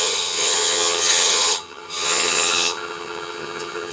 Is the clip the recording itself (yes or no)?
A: no